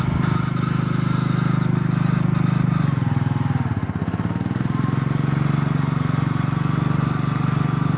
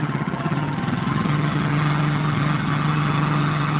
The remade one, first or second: second